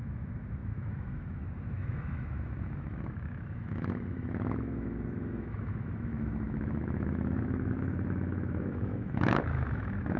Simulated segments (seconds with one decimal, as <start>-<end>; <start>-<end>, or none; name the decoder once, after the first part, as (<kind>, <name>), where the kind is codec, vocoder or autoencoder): 0.0-10.2 (autoencoder, DAC-VAE)